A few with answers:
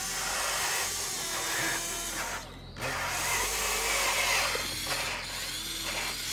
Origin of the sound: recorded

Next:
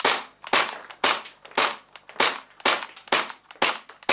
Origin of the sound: recorded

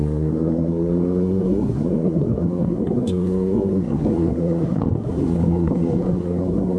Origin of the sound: remade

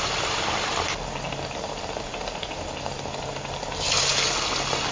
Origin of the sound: recorded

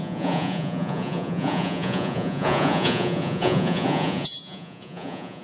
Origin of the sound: remade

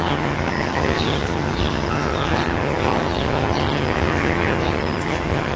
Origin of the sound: remade